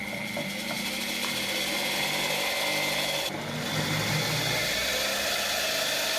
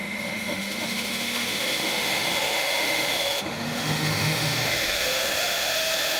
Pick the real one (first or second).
first